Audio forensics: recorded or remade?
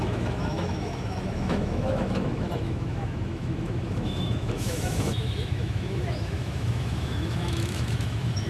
remade